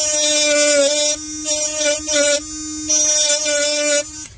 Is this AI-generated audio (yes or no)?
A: no